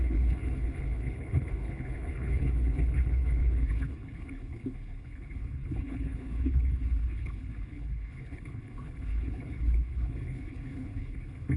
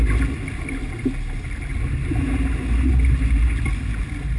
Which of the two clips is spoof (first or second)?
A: first